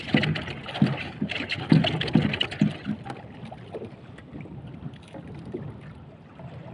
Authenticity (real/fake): real